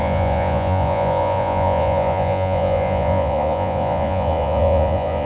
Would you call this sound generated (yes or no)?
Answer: yes